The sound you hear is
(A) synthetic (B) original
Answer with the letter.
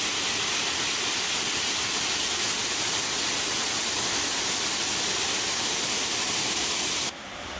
B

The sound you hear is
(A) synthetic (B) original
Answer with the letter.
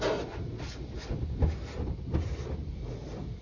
B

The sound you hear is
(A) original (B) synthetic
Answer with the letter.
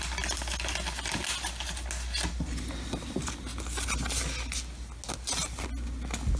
A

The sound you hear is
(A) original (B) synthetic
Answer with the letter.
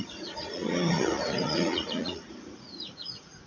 B